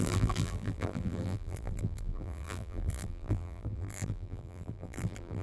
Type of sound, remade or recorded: remade